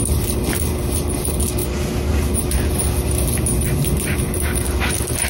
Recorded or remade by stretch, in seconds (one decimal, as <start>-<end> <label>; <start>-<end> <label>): 0.0-5.3 recorded